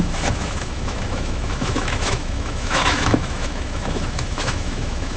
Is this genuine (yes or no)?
no